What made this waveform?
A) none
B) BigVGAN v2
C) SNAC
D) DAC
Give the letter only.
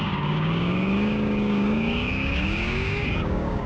D